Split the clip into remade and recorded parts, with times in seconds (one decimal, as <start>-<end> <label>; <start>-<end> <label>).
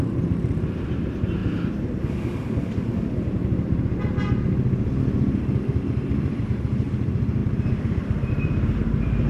0.0-1.4 remade; 1.4-6.4 recorded; 6.4-9.3 remade